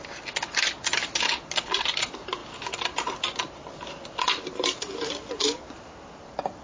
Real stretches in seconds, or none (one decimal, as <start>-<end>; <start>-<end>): 0.0-6.6